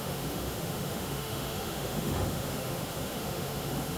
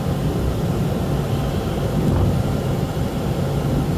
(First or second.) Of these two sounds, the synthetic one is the first